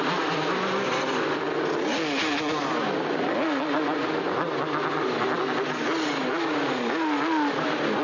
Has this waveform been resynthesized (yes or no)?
no